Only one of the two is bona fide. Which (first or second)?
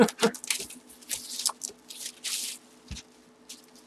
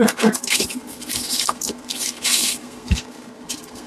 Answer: first